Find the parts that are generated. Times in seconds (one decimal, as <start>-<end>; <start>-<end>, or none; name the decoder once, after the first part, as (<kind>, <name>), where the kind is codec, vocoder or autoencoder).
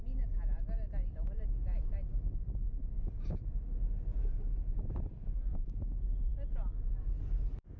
none